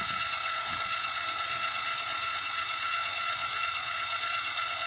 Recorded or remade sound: remade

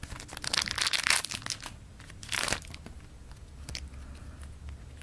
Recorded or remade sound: recorded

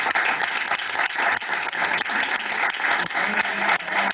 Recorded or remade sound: recorded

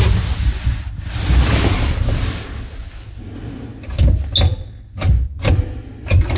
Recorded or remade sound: recorded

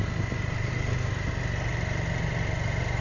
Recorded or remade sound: recorded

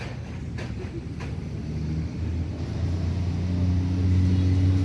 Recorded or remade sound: recorded